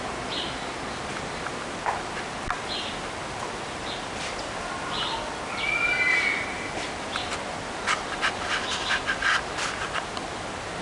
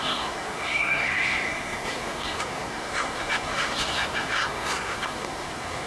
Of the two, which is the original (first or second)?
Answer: first